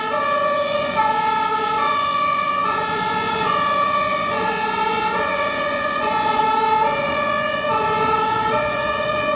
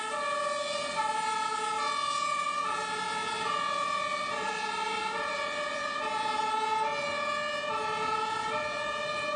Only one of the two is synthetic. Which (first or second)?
first